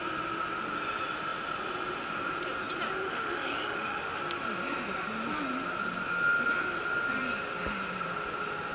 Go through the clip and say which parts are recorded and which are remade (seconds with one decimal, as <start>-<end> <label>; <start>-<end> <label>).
0.0-3.0 recorded; 3.0-4.2 remade; 4.2-8.7 recorded